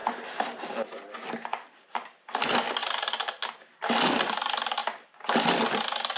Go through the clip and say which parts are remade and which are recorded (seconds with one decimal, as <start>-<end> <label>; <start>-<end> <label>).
0.0-0.9 remade; 0.9-1.5 recorded; 1.5-2.3 remade; 2.3-2.8 recorded; 2.8-3.3 remade; 3.3-6.2 recorded